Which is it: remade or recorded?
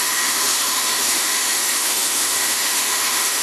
remade